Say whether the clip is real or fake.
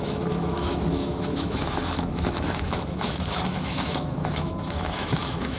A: fake